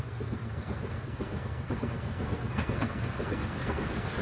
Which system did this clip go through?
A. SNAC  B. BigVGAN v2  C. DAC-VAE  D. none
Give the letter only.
A